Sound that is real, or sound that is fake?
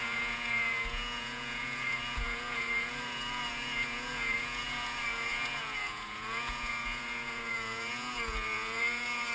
fake